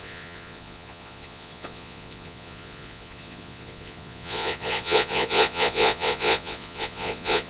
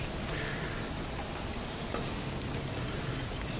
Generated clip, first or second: first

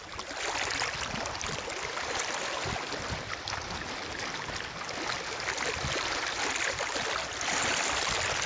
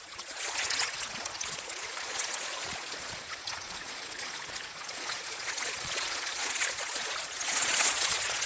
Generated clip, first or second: second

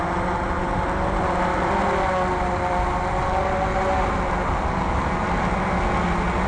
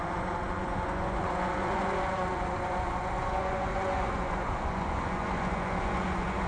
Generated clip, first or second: second